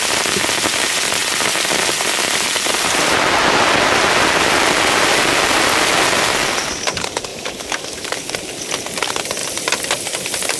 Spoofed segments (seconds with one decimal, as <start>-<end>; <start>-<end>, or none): 7.3-8.3